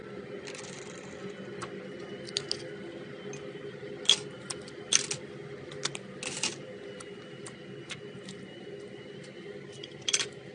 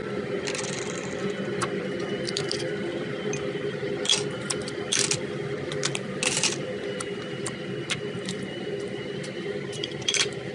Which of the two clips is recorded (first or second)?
first